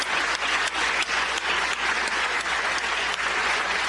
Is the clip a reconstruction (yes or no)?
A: yes